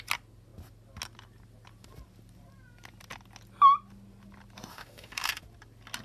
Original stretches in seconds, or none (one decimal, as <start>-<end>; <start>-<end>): 0.0-4.7; 5.4-6.0